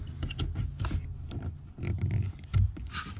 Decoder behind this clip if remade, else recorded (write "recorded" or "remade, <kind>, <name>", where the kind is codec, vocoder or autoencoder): recorded